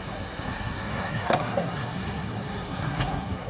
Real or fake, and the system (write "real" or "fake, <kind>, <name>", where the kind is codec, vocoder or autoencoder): fake, codec, SNAC